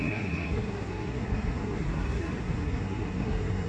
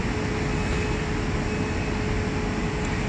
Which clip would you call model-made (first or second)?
first